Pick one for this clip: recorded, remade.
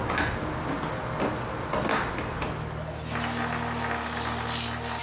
recorded